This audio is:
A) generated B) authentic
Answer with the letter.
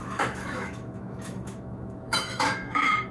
A